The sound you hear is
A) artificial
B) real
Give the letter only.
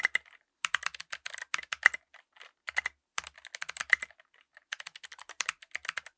B